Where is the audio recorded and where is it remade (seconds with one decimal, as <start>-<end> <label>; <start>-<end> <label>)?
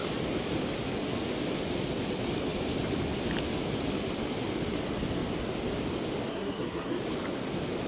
0.0-6.3 recorded; 6.3-7.0 remade; 7.0-7.9 recorded